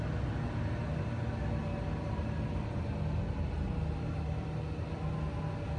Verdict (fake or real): real